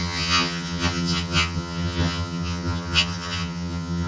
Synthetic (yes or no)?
yes